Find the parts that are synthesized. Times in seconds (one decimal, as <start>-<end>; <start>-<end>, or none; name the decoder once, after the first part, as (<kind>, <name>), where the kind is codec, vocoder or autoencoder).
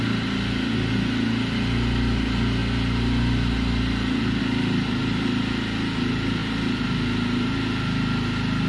none